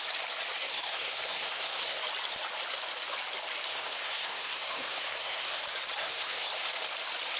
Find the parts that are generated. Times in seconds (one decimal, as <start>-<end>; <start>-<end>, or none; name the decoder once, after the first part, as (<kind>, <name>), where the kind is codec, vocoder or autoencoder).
0.6-2.0 (codec, SNAC); 3.7-5.6; 6.0-6.5